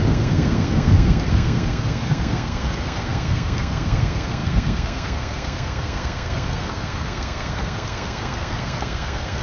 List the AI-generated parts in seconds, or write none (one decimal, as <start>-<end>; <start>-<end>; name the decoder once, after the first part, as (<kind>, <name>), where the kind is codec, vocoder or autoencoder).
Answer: 0.0-9.4 (codec, SNAC)